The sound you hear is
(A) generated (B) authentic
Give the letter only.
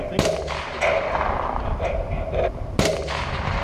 B